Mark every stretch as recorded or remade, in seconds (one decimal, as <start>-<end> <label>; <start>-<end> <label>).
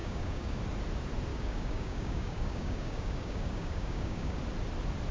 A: 0.0-0.6 remade; 0.6-1.3 recorded; 1.3-4.4 remade; 4.4-5.1 recorded